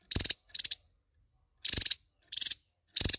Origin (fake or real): real